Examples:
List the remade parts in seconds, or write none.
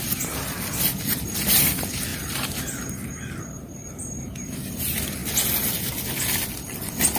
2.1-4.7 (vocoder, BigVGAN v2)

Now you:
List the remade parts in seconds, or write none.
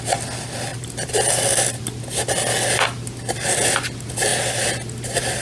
0.7-1.8 (vocoder, BigVGAN v2); 4.3-5.4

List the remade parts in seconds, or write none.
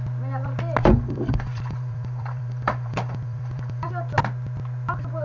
0.8-3.9 (vocoder, BigVGAN v2)